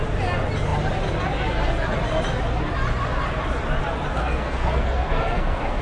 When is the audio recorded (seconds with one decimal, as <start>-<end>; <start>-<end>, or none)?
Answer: 0.0-4.2